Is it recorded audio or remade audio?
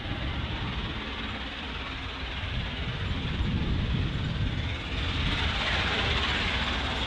recorded